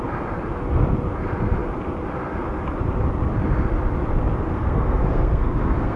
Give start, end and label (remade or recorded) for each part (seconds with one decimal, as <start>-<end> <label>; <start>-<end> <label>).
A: 0.0-4.5 recorded; 4.5-6.0 remade